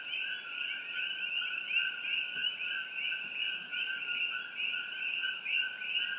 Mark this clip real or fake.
real